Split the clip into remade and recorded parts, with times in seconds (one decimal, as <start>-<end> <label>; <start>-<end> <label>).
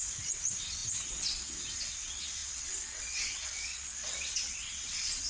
0.0-5.3 remade